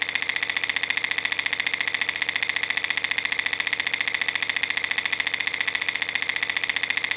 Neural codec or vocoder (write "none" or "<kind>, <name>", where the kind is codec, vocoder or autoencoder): none